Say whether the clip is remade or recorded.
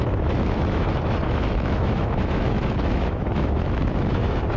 remade